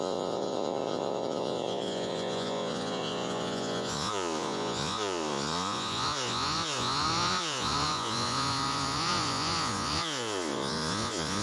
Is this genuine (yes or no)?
no